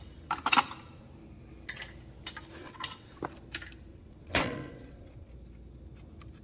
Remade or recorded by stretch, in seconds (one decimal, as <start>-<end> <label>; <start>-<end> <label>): 0.0-2.6 recorded; 2.6-3.2 remade; 3.2-3.9 recorded; 3.9-5.3 remade; 5.3-6.4 recorded